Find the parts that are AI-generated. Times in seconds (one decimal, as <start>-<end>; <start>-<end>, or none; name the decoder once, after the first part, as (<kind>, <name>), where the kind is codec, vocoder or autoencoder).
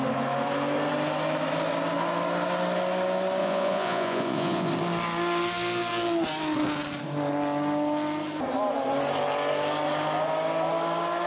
3.4-4.7 (vocoder, Vocos)